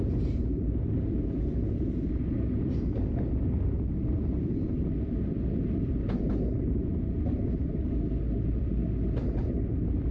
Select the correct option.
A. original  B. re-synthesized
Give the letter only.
A